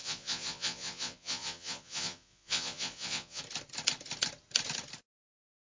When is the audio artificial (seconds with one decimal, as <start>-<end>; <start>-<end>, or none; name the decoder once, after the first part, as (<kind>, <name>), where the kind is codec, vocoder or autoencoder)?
0.0-3.4 (vocoder, Vocos)